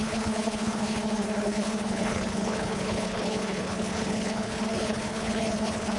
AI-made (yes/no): yes